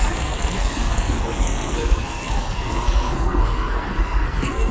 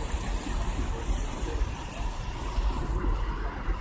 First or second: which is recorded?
second